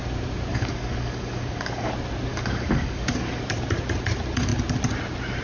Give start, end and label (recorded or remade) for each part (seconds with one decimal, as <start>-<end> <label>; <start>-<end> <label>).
0.0-0.5 recorded; 0.5-1.9 remade; 1.9-2.3 recorded; 2.3-3.4 remade; 3.4-5.4 recorded